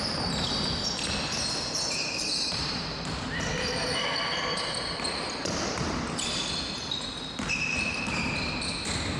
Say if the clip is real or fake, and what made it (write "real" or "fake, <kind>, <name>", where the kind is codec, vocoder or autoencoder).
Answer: real